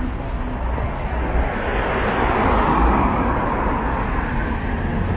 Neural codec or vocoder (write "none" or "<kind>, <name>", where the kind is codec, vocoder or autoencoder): none